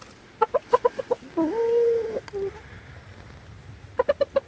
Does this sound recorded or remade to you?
recorded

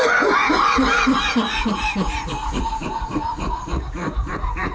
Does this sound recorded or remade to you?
remade